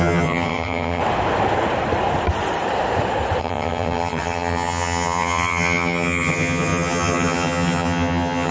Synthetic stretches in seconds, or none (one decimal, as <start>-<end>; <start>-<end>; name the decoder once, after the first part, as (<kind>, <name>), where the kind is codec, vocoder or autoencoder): 0.0-1.0 (vocoder, HiFi-GAN); 3.4-8.5